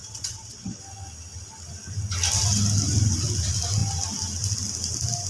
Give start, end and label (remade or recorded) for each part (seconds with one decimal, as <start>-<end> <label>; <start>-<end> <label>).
0.0-0.8 remade; 0.8-5.3 recorded